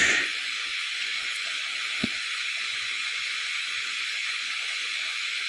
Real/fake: fake